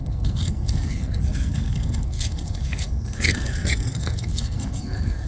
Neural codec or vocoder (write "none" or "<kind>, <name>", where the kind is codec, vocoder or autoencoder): codec, SNAC